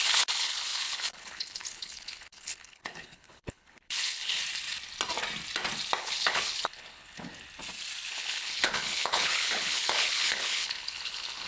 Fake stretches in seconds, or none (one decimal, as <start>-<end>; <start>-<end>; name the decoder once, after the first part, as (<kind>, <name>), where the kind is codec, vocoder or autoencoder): 0.0-4.4 (codec, HILCodec); 6.0-7.3; 8.1-11.5